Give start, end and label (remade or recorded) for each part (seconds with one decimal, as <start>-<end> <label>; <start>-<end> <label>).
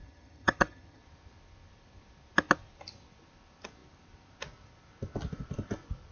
0.0-1.0 remade; 1.0-6.1 recorded